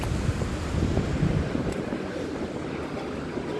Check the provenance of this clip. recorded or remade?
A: recorded